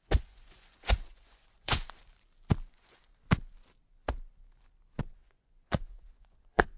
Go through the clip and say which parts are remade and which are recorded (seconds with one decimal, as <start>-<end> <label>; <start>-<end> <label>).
0.0-2.0 remade; 2.0-2.7 recorded; 2.7-3.1 remade; 3.1-5.0 recorded; 5.0-6.8 remade